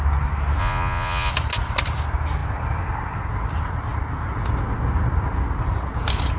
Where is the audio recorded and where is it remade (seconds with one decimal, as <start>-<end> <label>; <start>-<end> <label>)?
0.0-0.6 recorded; 0.6-1.3 remade; 1.3-6.4 recorded